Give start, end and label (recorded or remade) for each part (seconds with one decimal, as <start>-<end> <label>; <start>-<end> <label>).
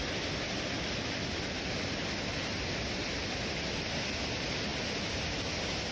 0.0-5.9 recorded